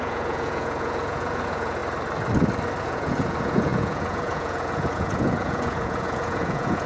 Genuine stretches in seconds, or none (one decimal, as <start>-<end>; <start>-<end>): 1.8-2.8